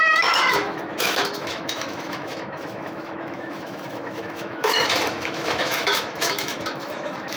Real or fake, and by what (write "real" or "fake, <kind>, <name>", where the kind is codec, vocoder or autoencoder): fake, autoencoder, DAC-VAE